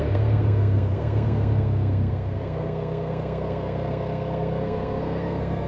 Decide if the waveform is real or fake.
fake